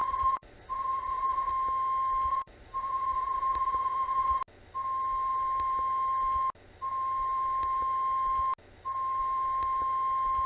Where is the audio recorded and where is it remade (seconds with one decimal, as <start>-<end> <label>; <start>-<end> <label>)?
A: 0.0-1.5 remade; 1.5-2.3 recorded; 2.3-4.4 remade; 4.4-10.5 recorded